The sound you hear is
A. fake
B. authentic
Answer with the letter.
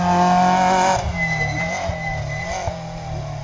B